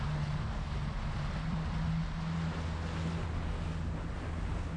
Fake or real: real